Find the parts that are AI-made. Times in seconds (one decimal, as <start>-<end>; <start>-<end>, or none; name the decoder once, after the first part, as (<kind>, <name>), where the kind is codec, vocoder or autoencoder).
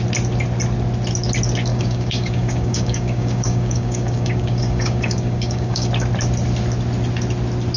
1.7-5.9 (codec, DAC)